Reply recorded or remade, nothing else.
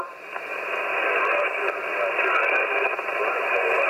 remade